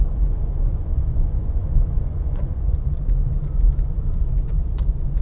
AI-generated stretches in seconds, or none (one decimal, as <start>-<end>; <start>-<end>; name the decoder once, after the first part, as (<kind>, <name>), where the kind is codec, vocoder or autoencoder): 0.0-5.2 (vocoder, Vocos)